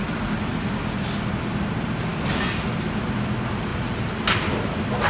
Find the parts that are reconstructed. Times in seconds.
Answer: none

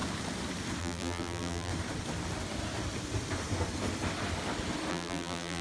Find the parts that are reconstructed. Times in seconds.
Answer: 0.8-1.7 (vocoder, BigVGAN v2); 4.9-5.6

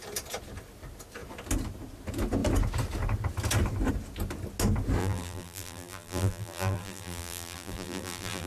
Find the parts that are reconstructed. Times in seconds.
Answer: 5.0-8.5 (vocoder, BigVGAN v2)

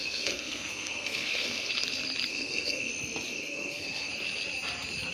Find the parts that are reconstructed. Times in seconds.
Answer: 0.0-1.7 (codec, SNAC); 2.3-2.9; 3.3-4.1

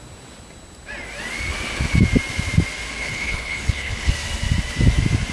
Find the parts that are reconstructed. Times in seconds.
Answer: 3.0-4.1 (codec, HILCodec)

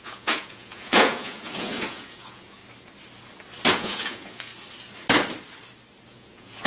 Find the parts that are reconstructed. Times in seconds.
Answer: 0.0-2.6 (vocoder, Vocos); 3.7-4.5; 6.1-6.7